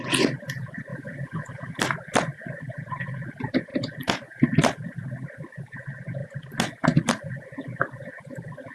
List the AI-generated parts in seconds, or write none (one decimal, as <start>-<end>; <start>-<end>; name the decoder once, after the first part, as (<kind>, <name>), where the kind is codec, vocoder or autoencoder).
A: none

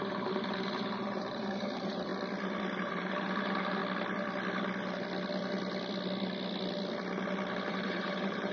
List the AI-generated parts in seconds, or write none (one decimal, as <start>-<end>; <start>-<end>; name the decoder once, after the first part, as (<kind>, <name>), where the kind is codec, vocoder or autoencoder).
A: 0.0-2.1 (vocoder, BigVGAN v2); 2.8-3.8; 7.7-8.5

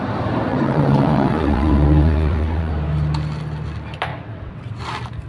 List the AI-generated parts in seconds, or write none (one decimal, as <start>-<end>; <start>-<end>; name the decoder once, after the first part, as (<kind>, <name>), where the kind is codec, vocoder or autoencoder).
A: 0.5-2.7 (vocoder, WaveNeXt); 4.1-4.8

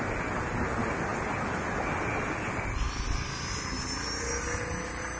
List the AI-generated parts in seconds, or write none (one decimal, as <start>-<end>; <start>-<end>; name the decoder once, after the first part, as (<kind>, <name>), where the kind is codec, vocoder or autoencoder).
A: none

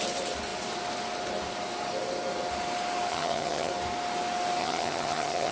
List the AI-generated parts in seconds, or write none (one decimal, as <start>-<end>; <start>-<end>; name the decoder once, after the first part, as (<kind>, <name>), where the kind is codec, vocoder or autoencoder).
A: 3.1-3.7 (vocoder, HiFi-GAN); 4.6-5.5